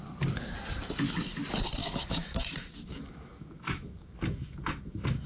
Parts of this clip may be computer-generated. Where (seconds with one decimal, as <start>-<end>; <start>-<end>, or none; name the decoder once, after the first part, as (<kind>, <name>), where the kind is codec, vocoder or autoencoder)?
1.8-5.3 (autoencoder, DAC-VAE)